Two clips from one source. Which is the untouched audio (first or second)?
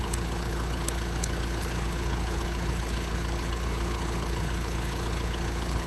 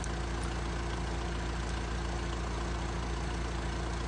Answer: second